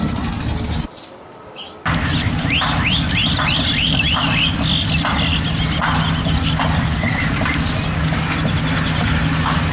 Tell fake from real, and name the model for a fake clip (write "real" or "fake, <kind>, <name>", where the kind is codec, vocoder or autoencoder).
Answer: real